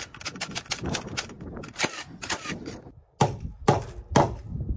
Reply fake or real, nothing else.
real